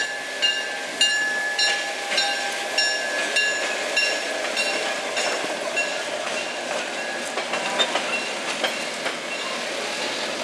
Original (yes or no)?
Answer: yes